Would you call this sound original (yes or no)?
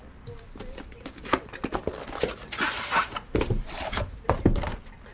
yes